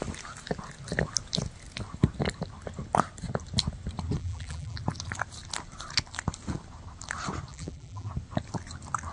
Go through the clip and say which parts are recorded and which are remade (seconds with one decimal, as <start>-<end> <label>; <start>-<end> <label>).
0.0-4.2 recorded; 4.2-4.8 remade; 4.8-7.5 recorded; 7.5-8.1 remade; 8.1-9.1 recorded